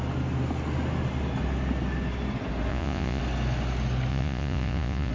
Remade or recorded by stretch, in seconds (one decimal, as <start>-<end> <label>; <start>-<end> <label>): 0.0-2.7 recorded; 2.7-3.2 remade; 3.2-4.1 recorded; 4.1-5.1 remade